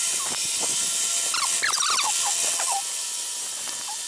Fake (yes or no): no